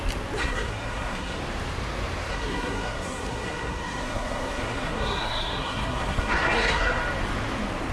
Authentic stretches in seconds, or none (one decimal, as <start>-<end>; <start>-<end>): 0.0-0.4; 1.4-2.3; 7.0-7.9